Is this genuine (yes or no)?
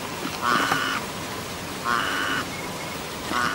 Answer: yes